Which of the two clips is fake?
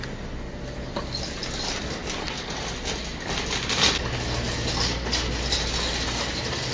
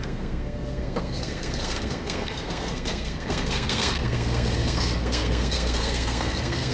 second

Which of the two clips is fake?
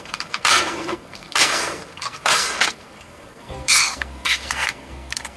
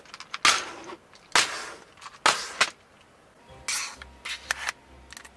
first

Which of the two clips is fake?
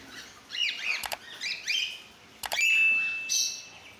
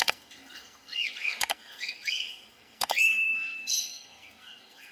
second